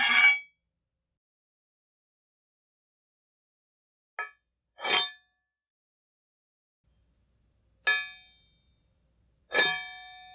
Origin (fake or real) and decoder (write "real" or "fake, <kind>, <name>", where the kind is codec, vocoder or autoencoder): real